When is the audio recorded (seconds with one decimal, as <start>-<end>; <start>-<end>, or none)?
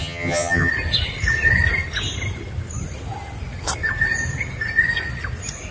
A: 0.7-5.7